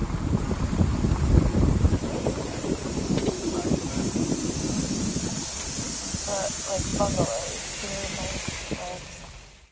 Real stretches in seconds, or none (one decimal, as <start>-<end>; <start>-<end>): 5.2-9.7